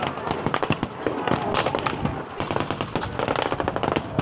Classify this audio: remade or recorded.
recorded